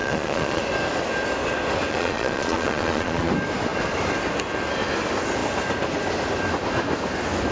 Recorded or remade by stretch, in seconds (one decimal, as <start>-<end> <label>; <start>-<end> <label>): 0.0-0.6 remade; 0.6-1.9 recorded; 1.9-3.3 remade; 3.3-7.5 recorded

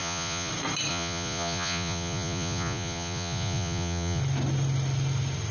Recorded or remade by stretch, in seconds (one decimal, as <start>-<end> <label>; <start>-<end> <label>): 0.0-0.5 remade; 0.5-0.9 recorded; 0.9-4.2 remade; 4.2-5.5 recorded

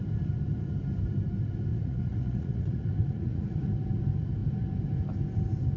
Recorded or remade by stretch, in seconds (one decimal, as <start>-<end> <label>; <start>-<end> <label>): 0.0-1.7 recorded; 1.7-3.7 remade; 3.7-5.8 recorded

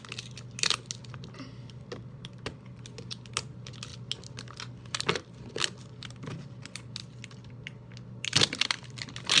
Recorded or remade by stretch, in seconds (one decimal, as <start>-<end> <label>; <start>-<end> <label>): 0.0-9.4 recorded